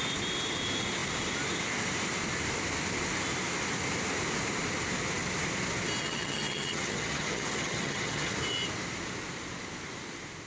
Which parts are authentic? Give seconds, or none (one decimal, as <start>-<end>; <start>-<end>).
0.0-6.0; 8.3-10.5